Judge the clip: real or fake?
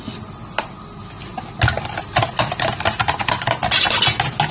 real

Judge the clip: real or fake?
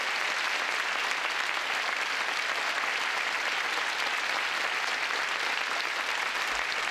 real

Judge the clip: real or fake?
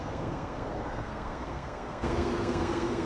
fake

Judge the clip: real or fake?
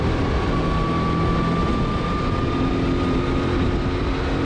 real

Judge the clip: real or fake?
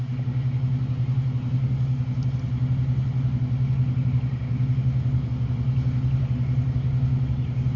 real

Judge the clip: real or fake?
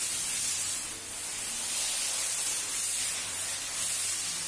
real